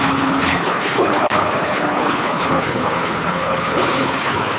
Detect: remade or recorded remade